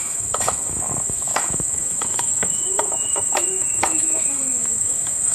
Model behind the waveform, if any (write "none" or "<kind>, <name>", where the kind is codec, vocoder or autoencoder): autoencoder, DAC-VAE